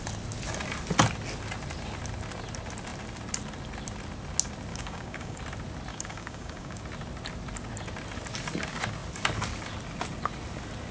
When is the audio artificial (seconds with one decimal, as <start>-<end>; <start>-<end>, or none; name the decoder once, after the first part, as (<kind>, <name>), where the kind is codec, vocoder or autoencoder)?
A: 4.7-5.4 (codec, DAC); 5.9-6.8